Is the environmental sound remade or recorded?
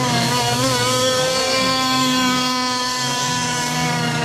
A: remade